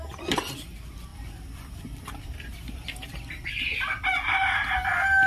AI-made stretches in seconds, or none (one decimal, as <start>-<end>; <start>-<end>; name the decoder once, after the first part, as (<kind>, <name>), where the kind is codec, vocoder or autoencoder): 1.1-3.5 (vocoder, BigVGAN v2)